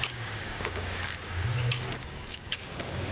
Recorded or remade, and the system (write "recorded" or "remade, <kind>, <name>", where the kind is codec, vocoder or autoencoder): remade, codec, DAC